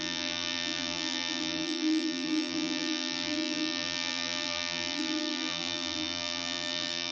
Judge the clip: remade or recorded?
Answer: remade